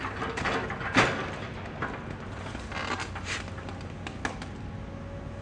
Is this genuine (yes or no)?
yes